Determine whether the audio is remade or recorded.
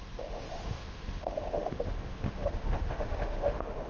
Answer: remade